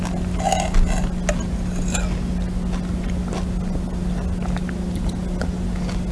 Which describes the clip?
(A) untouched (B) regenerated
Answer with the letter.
A